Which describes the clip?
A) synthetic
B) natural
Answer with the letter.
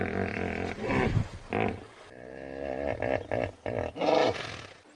B